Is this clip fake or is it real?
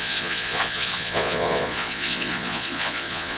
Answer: fake